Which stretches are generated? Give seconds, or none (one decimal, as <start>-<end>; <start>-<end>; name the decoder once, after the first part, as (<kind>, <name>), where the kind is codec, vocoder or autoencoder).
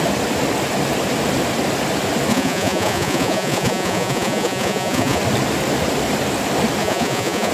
2.3-5.2 (vocoder, Vocos); 6.8-7.5